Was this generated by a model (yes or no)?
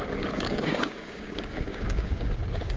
yes